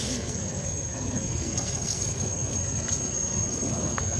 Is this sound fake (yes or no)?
yes